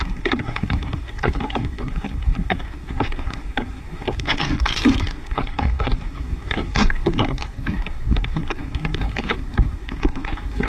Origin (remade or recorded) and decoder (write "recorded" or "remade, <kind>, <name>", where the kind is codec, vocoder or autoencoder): remade, codec, SNAC